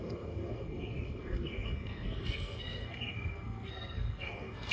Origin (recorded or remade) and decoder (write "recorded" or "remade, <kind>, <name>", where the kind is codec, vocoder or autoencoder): remade, codec, SNAC